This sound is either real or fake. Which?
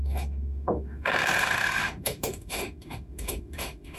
fake